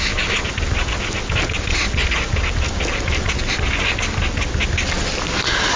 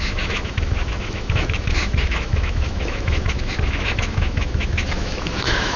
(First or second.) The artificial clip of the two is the second